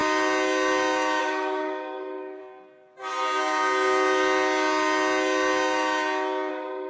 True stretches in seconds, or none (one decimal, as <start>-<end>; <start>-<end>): 0.0-1.2; 2.4-6.5